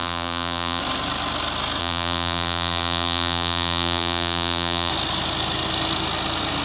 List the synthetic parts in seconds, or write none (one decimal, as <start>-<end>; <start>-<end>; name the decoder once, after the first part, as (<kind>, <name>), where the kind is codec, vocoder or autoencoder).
0.0-0.8 (vocoder, BigVGAN v2); 1.8-4.9